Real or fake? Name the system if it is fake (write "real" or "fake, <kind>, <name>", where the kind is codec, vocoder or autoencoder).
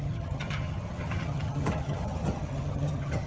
fake, vocoder, HiFi-GAN